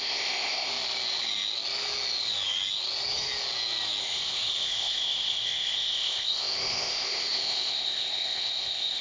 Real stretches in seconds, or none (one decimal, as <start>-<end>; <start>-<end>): 0.7-4.0